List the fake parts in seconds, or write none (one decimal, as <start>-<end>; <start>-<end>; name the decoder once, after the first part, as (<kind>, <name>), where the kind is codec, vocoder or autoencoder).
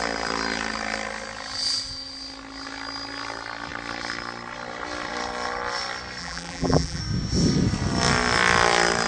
6.2-7.0 (vocoder, BigVGAN v2)